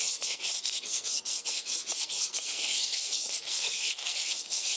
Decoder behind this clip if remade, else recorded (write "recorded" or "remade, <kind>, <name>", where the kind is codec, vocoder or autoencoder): remade, codec, SNAC